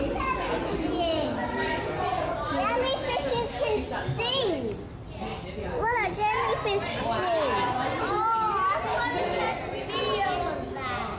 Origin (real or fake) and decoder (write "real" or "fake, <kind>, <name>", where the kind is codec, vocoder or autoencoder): real